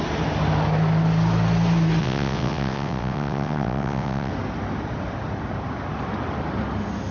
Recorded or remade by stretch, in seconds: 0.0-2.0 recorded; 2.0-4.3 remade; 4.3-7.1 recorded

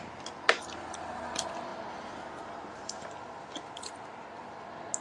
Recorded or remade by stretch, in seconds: 0.0-5.0 recorded